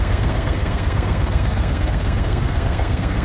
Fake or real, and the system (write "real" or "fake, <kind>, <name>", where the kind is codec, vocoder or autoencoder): fake, codec, SNAC